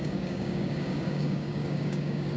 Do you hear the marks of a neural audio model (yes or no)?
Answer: yes